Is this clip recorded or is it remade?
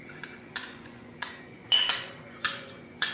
remade